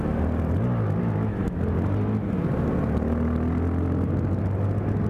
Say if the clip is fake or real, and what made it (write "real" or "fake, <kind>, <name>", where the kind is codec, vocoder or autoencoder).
real